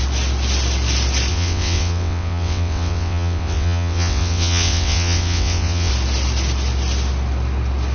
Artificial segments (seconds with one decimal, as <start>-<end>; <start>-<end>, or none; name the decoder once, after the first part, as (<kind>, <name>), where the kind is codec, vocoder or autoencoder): 1.3-5.9 (vocoder, WaveNeXt)

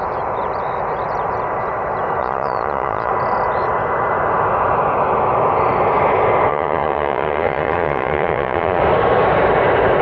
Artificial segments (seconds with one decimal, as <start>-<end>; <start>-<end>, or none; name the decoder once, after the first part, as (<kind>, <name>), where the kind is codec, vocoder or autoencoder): 2.2-3.1 (vocoder, Vocos); 6.5-8.8